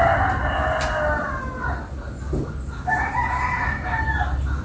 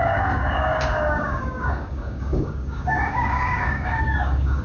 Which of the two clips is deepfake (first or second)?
second